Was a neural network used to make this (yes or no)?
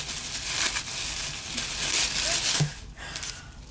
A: no